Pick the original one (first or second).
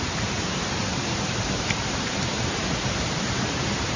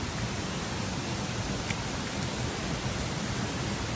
second